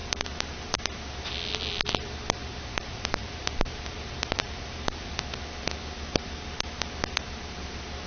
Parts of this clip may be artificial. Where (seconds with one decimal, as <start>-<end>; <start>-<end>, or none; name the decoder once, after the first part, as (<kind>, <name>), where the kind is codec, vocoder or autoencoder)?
2.5-5.1 (vocoder, BigVGAN v2)